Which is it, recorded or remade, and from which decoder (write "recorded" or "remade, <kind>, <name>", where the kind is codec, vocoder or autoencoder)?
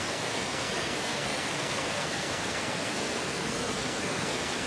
remade, codec, SNAC